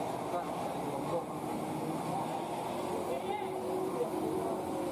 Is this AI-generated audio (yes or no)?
no